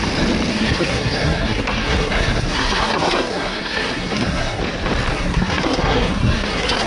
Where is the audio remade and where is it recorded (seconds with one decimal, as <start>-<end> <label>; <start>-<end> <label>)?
0.0-0.5 recorded; 0.5-4.6 remade; 4.6-5.1 recorded; 5.1-6.9 remade